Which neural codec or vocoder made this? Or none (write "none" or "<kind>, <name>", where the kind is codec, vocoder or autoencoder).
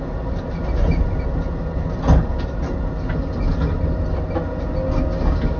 none